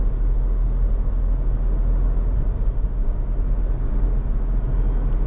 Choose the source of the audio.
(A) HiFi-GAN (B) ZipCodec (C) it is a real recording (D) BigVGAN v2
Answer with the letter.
C